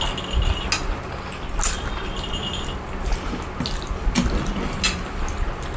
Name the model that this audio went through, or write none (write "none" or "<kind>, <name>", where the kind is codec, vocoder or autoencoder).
none